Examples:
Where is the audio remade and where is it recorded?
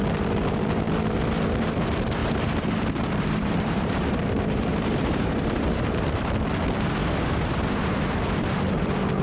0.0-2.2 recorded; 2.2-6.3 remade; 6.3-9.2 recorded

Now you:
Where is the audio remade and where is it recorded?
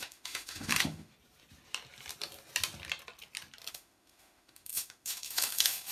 0.0-1.1 remade; 1.1-3.7 recorded; 3.7-5.9 remade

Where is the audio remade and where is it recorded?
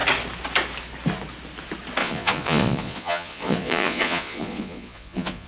0.0-2.0 recorded; 2.0-5.5 remade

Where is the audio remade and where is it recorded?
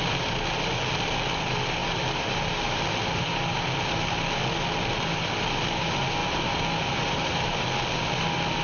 0.0-1.8 recorded; 1.8-2.8 remade; 2.8-6.2 recorded; 6.2-7.6 remade; 7.6-8.6 recorded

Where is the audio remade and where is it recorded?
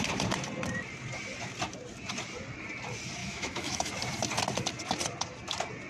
0.0-3.2 recorded; 3.2-3.9 remade; 3.9-5.9 recorded